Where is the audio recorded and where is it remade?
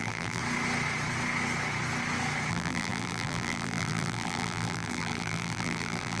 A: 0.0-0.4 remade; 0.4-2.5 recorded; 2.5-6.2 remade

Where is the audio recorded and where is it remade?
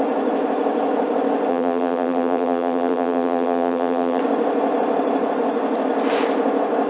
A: 0.0-1.5 recorded; 1.5-4.2 remade; 4.2-6.9 recorded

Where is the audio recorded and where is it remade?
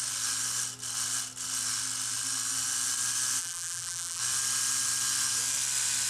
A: 0.0-3.4 recorded; 3.4-4.2 remade; 4.2-6.1 recorded